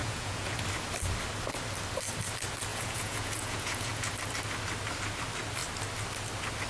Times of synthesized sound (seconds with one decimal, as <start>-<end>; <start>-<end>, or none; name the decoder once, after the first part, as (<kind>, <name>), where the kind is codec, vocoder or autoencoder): 0.0-0.6 (vocoder, Vocos); 2.7-4.1